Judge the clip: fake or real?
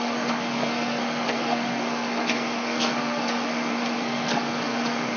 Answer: fake